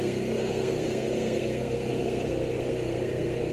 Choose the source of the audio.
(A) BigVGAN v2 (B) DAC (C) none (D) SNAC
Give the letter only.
D